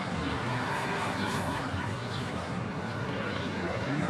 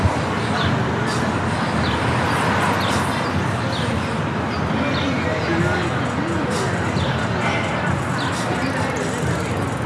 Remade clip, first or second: first